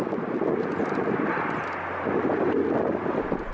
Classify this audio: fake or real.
real